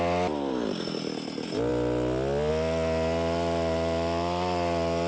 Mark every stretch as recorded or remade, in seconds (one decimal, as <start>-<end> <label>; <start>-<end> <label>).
0.0-5.1 recorded